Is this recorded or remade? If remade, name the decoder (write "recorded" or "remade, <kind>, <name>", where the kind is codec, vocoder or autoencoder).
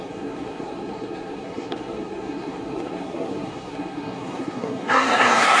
remade, codec, SNAC